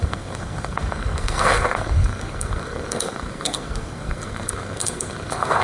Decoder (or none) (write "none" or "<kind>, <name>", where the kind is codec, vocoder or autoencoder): codec, SNAC